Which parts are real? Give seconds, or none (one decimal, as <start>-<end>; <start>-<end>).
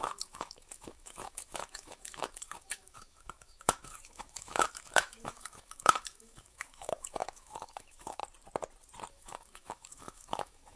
8.2-9.1